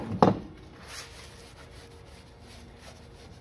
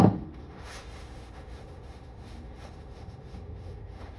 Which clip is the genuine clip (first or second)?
first